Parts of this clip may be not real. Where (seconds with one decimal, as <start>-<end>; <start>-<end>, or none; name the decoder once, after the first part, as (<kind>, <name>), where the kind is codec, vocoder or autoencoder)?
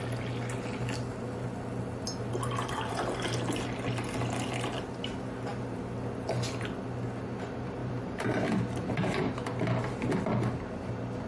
7.8-8.4 (vocoder, BigVGAN v2)